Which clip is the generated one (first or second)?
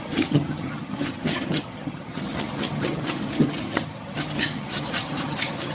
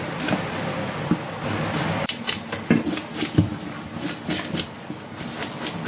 first